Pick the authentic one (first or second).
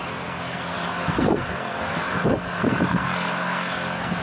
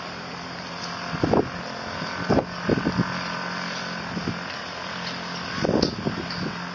second